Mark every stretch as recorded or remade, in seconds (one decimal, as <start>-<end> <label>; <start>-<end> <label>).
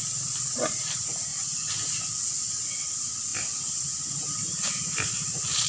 0.0-1.3 recorded; 1.3-2.0 remade; 2.0-3.3 recorded; 3.3-4.1 remade; 4.1-5.7 recorded